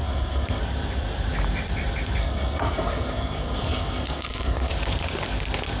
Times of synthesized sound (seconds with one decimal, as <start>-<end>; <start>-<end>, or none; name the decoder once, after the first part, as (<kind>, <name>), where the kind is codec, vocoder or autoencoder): 0.0-0.6 (codec, SNAC); 2.2-4.7